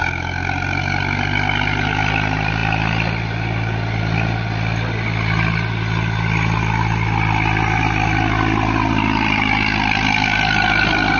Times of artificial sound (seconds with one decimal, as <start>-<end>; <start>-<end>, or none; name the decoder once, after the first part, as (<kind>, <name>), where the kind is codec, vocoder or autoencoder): none